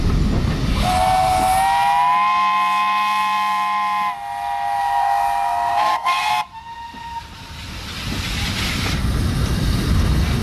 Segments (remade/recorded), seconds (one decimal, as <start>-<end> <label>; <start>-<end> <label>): 0.0-4.8 recorded; 4.8-6.3 remade; 6.3-10.4 recorded